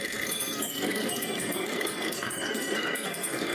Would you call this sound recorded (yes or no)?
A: no